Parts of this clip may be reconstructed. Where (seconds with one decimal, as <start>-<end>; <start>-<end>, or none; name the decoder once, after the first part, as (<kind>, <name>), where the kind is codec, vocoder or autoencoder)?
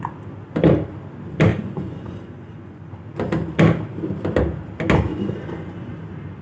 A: 1.5-2.9 (vocoder, Vocos); 5.1-6.0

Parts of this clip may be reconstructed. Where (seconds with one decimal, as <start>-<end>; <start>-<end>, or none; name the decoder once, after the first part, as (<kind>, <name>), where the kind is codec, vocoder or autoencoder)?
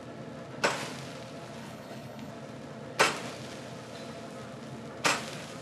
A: 1.6-2.3 (codec, HILCodec)